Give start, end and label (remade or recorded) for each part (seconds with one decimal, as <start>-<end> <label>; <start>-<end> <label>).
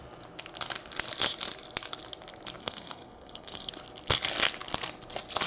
0.0-2.6 recorded; 2.6-3.7 remade; 3.7-5.5 recorded